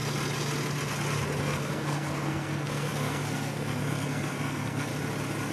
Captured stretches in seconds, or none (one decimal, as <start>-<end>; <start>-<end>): 0.0-1.4; 4.9-5.5